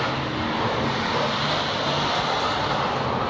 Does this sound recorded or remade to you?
recorded